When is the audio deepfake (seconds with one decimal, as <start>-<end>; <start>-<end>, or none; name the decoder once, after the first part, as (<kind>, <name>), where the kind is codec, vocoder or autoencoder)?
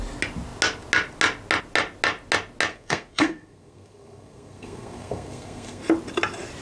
2.7-5.8 (codec, SNAC)